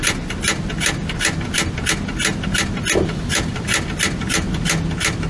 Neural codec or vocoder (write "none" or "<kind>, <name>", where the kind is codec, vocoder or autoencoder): none